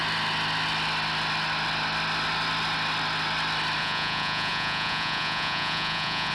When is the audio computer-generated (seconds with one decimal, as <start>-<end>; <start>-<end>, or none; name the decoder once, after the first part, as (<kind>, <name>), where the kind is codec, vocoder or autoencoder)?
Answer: 3.8-6.3 (vocoder, Vocos)